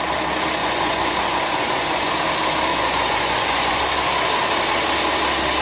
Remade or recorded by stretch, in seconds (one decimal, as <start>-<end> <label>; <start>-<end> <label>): 0.0-0.6 recorded; 0.6-2.1 remade; 2.1-2.7 recorded; 2.7-3.8 remade; 3.8-5.6 recorded